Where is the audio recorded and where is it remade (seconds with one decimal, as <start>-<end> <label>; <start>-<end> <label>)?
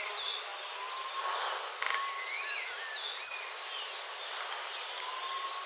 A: 0.0-5.7 recorded